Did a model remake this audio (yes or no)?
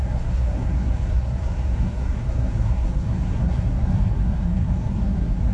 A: yes